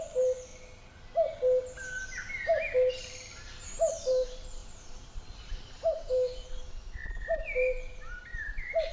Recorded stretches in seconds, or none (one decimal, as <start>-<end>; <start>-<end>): 0.5-2.9